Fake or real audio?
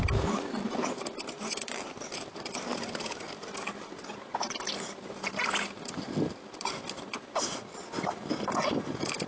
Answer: real